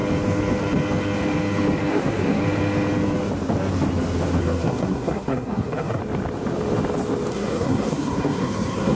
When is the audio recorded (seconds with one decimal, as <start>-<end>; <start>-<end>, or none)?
0.0-1.9; 2.4-4.4; 6.0-7.3